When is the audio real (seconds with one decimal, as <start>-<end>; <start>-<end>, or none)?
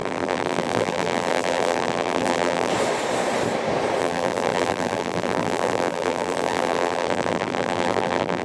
2.7-4.0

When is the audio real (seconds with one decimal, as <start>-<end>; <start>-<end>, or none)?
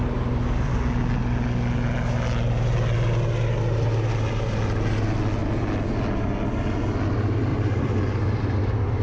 0.0-7.5; 8.4-9.0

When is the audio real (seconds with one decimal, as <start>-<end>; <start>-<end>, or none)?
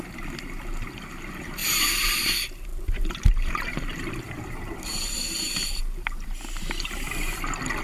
0.0-1.6; 2.3-2.7; 5.8-7.8